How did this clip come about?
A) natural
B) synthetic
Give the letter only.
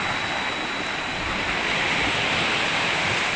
A